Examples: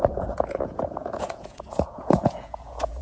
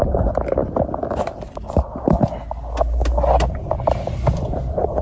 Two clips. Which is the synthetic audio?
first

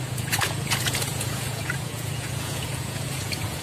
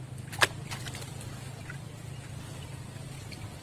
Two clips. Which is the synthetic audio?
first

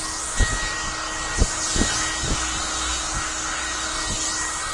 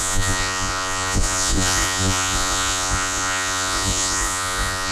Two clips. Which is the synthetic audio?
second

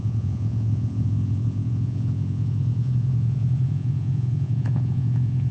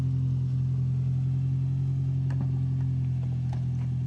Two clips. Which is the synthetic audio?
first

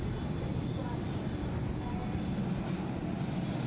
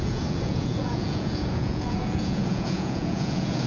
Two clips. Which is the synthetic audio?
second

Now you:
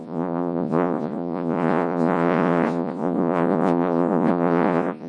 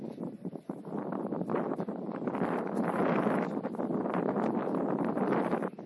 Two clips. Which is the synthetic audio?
first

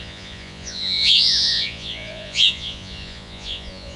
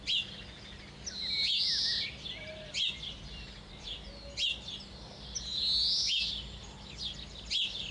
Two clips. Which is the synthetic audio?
first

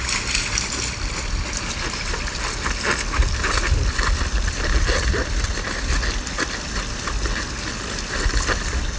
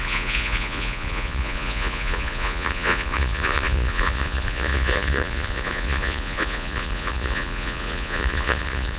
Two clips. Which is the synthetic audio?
second